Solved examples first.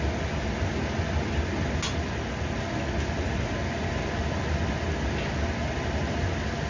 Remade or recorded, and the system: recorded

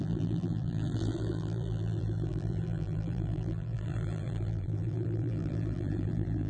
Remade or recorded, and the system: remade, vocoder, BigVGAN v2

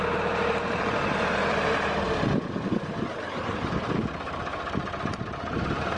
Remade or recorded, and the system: remade, vocoder, BigVGAN v2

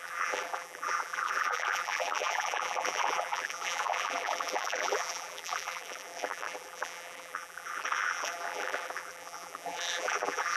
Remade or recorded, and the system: remade, vocoder, BigVGAN v2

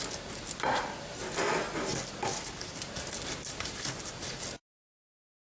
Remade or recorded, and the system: recorded